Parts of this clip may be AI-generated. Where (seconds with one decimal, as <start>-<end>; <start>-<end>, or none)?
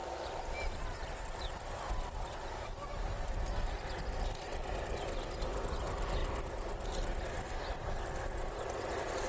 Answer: none